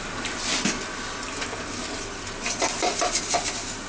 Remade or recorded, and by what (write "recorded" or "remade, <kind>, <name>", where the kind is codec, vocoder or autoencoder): recorded